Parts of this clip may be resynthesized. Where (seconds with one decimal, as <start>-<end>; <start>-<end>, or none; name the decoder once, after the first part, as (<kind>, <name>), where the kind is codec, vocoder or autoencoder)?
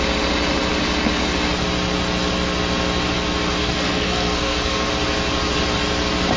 3.6-4.9 (codec, SNAC)